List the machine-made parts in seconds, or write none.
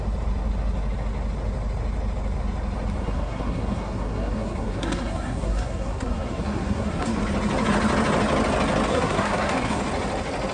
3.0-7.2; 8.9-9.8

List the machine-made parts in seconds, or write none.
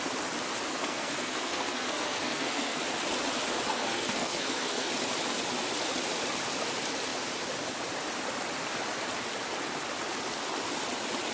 0.7-2.8; 3.7-4.9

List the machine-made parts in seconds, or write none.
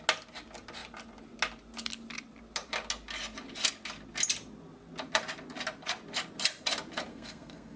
7.1-7.8